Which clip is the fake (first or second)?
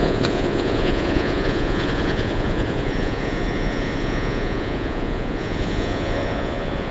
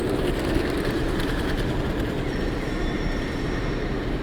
first